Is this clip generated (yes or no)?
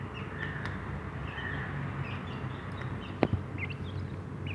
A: no